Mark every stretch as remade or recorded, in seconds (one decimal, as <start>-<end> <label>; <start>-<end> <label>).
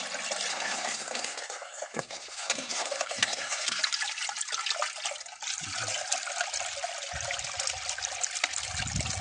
0.0-0.5 recorded; 0.5-3.8 remade; 3.8-9.2 recorded